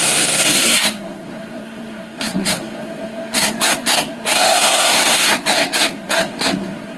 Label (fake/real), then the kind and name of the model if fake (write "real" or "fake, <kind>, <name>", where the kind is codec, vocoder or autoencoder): fake, codec, SNAC